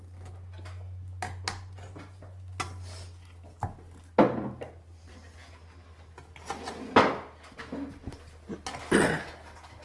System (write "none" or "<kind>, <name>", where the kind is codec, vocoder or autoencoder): none